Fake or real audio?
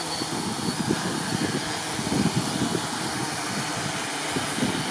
real